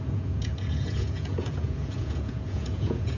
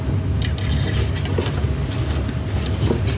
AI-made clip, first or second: first